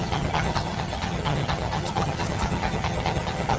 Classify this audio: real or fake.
fake